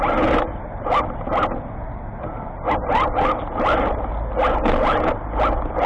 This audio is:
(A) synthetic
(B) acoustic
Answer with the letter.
B